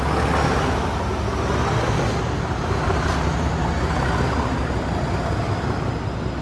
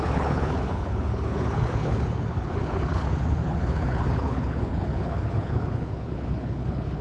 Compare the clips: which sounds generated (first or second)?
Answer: second